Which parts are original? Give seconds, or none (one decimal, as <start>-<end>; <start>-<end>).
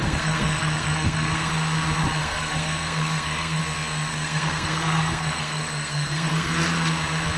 1.5-2.2; 3.6-4.1; 6.5-7.4